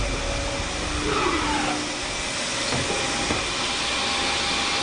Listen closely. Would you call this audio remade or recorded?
recorded